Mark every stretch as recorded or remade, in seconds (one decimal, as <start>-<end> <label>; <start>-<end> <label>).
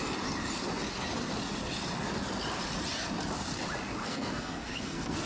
0.0-4.0 recorded; 4.0-5.3 remade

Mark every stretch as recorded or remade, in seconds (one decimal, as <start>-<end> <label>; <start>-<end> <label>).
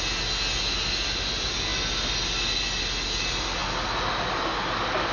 0.0-5.1 recorded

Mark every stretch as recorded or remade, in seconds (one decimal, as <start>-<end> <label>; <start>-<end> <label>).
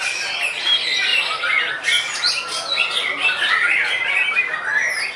0.0-3.3 recorded; 3.3-4.5 remade; 4.5-5.2 recorded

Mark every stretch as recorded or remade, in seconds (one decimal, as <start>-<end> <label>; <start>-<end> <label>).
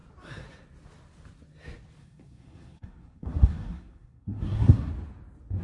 0.0-2.0 recorded; 2.0-4.9 remade; 4.9-5.6 recorded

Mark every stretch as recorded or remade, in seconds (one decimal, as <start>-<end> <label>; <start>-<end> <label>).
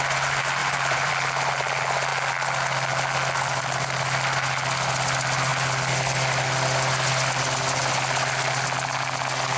0.0-0.6 recorded; 0.6-1.1 remade; 1.1-9.6 recorded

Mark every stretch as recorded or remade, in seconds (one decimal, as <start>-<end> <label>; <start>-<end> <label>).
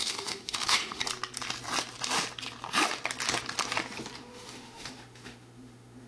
0.0-1.0 remade; 1.0-4.2 recorded; 4.2-6.1 remade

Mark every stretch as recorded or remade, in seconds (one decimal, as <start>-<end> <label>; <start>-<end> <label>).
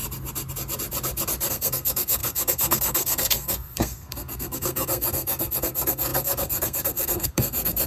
0.0-1.5 recorded; 1.5-7.9 remade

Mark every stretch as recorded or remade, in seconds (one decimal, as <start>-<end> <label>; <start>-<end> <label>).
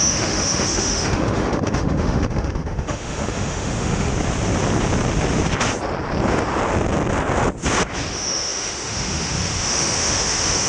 0.0-4.1 remade; 4.1-8.1 recorded; 8.1-10.7 remade